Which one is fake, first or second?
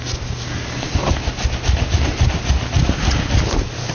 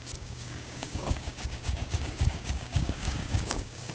second